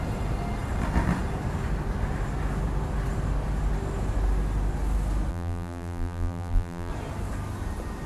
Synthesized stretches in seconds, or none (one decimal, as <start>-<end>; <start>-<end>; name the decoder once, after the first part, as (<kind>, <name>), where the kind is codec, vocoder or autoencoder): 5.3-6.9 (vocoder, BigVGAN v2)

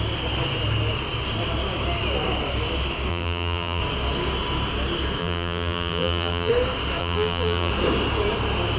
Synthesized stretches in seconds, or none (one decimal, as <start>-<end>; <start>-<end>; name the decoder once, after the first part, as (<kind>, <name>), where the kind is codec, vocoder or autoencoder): 3.1-3.8 (vocoder, BigVGAN v2); 5.2-6.5; 7.0-7.7

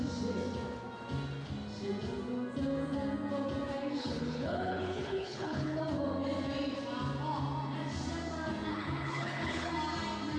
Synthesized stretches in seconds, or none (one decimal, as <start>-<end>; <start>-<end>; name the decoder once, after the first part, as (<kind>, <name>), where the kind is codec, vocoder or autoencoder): 4.0-5.8 (codec, HILCodec); 8.7-9.7

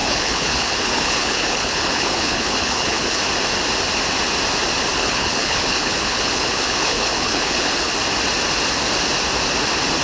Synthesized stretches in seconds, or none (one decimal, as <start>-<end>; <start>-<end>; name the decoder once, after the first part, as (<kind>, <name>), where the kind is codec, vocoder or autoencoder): 0.0-3.2 (codec, HILCodec); 4.9-7.9

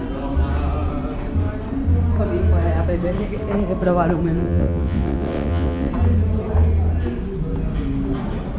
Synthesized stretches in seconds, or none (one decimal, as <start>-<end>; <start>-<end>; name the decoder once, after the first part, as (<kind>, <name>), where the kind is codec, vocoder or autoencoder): 4.4-5.9 (vocoder, WaveNeXt)